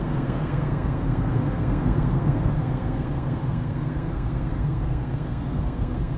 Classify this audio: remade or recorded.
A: remade